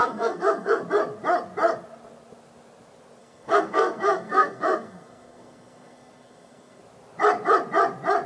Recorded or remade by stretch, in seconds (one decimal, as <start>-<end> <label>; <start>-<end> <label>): 0.0-0.8 remade; 0.8-3.2 recorded; 3.2-6.8 remade; 6.8-8.3 recorded